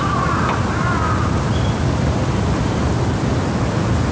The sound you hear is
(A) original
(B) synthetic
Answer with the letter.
A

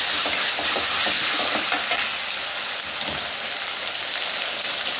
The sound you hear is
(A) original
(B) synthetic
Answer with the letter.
A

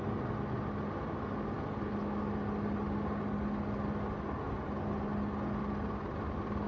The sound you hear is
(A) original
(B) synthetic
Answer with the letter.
A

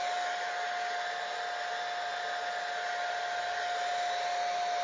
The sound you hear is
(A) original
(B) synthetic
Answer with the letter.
A